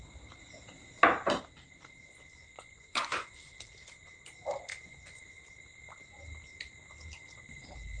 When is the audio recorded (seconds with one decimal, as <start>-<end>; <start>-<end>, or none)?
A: 0.0-2.3; 3.4-4.7; 5.2-8.0